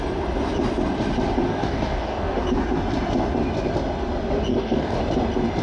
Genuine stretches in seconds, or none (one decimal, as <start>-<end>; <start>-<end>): 0.0-1.5; 2.4-4.5; 5.0-5.6